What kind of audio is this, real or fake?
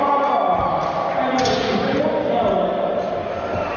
real